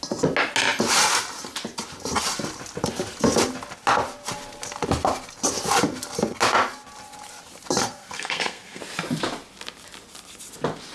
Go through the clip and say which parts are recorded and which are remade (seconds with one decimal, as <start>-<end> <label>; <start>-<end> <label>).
0.0-7.8 recorded; 7.8-8.8 remade; 8.8-10.9 recorded